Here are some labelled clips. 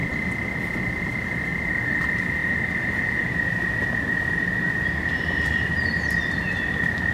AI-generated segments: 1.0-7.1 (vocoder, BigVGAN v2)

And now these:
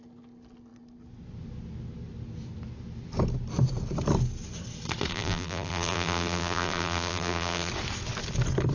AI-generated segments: 5.1-7.7 (vocoder, BigVGAN v2)